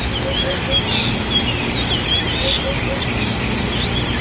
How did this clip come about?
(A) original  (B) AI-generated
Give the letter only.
A